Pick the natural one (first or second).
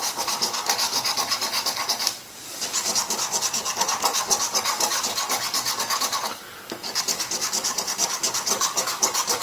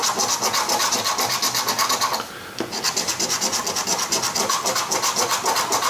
second